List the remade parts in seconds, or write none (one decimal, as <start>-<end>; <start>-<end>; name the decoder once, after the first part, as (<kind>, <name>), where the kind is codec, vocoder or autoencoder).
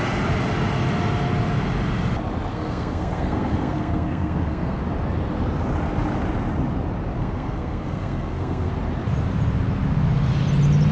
2.5-4.8 (codec, SNAC); 7.2-8.7